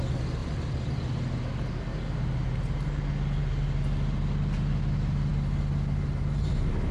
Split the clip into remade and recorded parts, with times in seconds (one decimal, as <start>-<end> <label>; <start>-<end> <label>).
0.0-6.9 recorded